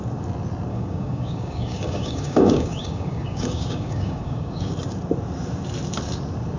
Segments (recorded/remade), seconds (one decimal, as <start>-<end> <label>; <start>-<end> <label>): 0.0-0.7 recorded; 0.7-4.7 remade; 4.7-6.6 recorded